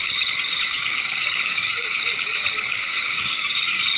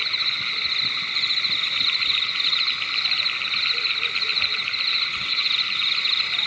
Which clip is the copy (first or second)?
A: first